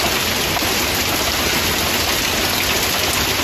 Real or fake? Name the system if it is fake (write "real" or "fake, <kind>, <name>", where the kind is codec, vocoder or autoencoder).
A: real